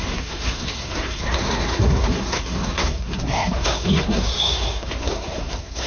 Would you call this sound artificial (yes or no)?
yes